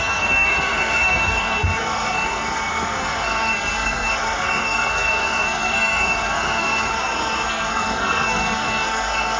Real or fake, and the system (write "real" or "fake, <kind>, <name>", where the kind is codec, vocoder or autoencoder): fake, codec, SNAC